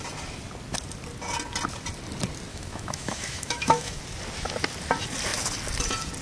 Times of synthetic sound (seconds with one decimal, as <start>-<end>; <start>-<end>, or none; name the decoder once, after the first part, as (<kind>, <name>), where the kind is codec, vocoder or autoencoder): 2.5-4.0 (autoencoder, DAC-VAE)